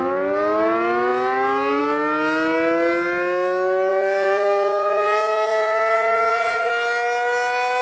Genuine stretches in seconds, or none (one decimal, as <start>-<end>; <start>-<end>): 0.0-3.9; 6.7-7.8